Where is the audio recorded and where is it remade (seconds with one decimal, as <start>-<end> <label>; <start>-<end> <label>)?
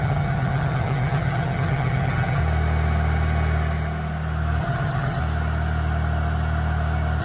0.0-2.4 remade; 2.4-4.6 recorded; 4.6-5.2 remade; 5.2-7.2 recorded